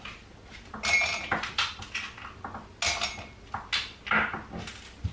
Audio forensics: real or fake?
real